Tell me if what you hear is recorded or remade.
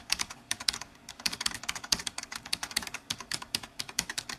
remade